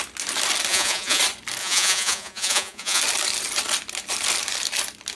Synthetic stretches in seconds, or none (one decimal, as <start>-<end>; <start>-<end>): 0.7-1.2; 1.6-3.0